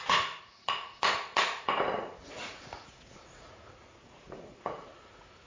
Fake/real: fake